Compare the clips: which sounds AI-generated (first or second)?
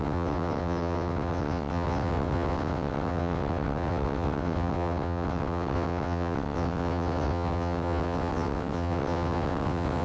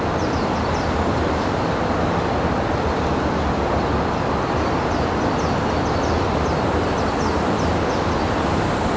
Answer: first